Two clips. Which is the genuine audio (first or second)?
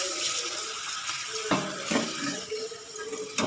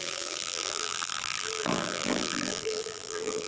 first